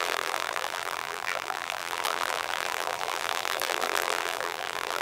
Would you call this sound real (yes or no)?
no